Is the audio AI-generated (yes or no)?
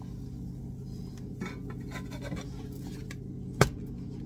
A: no